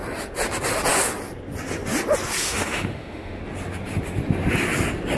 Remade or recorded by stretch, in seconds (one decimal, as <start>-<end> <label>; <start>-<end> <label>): 0.0-2.4 recorded; 2.4-3.4 remade; 3.4-5.2 recorded